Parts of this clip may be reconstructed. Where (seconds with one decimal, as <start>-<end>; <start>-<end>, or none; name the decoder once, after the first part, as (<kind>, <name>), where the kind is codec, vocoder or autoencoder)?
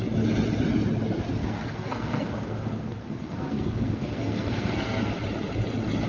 1.4-5.1 (codec, SNAC)